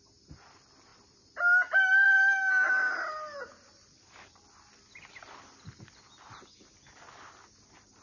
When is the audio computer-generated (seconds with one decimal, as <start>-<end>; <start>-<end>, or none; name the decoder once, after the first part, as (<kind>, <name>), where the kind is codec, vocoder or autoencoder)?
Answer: none